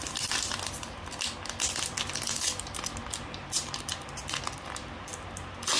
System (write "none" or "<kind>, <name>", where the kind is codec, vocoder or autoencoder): none